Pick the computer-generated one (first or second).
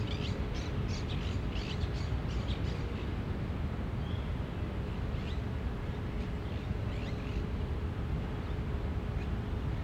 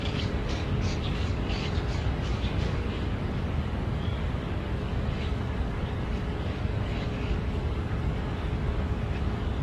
second